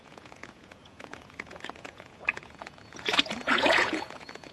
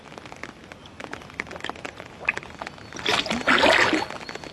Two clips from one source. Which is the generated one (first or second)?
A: first